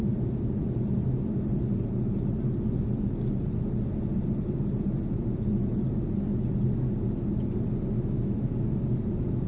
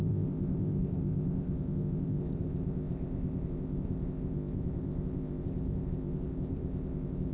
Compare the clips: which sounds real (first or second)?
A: first